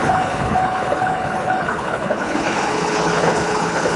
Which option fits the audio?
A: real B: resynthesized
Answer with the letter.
B